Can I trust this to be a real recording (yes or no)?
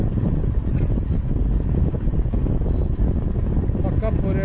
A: yes